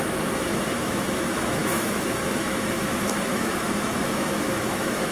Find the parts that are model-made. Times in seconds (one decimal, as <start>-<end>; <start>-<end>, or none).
0.0-5.1

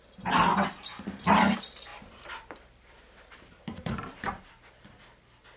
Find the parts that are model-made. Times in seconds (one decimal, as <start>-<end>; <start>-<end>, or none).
1.9-4.4

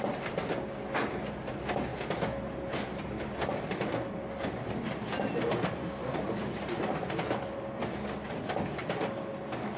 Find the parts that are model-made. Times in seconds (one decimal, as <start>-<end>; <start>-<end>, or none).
none

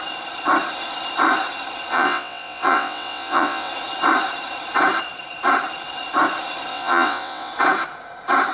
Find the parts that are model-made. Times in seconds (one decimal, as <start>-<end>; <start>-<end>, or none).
1.9-3.7; 6.7-7.5

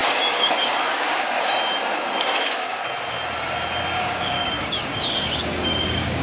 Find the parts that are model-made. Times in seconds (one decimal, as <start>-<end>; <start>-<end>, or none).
0.0-1.5; 2.2-2.8; 4.0-6.2

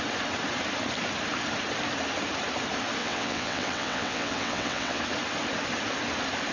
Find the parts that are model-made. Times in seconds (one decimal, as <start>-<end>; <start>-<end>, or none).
3.0-5.0

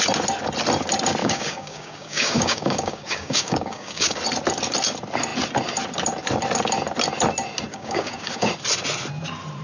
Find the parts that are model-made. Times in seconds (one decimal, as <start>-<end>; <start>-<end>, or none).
1.2-4.2; 7.7-8.5

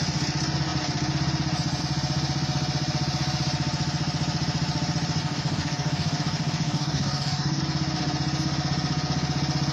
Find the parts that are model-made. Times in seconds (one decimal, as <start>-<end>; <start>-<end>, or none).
5.2-7.6